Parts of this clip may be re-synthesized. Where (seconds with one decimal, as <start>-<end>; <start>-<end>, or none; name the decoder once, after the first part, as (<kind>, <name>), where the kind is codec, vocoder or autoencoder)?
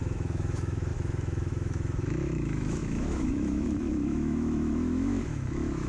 0.0-5.9 (autoencoder, DAC-VAE)